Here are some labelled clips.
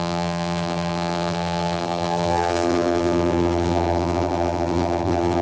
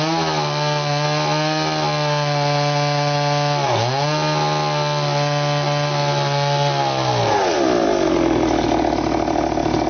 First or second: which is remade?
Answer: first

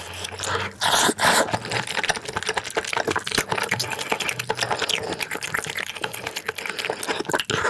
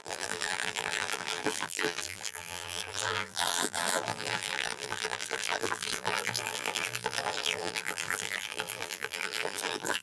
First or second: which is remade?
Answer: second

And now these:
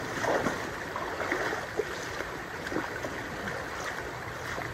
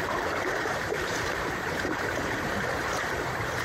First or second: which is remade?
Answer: second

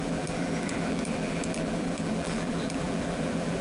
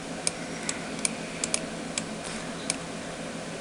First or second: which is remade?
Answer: first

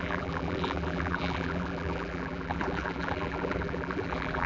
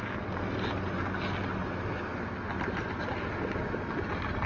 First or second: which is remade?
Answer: first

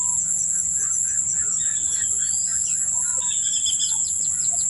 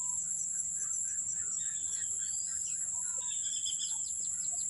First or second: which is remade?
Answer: second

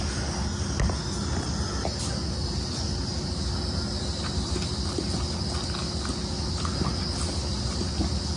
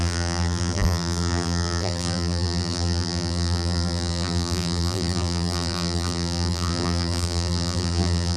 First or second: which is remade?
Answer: second